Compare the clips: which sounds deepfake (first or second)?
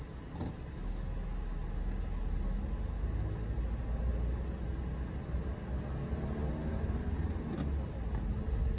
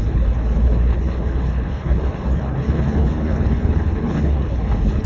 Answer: second